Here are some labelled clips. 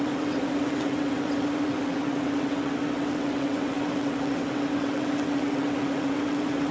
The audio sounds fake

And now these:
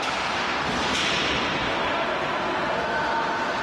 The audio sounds real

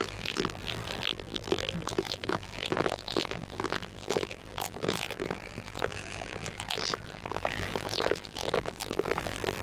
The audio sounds fake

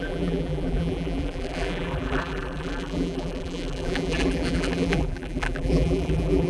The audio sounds fake